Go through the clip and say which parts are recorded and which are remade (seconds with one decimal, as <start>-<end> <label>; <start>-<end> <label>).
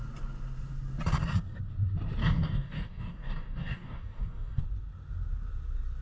0.0-2.2 recorded; 2.2-4.6 remade; 4.6-6.0 recorded